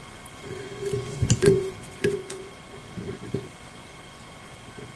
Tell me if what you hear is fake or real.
fake